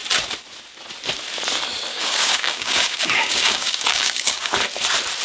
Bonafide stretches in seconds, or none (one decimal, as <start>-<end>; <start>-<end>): 0.0-1.9; 4.5-5.2